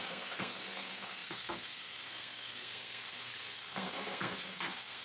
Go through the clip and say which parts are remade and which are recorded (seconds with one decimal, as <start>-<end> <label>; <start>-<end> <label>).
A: 0.0-5.0 remade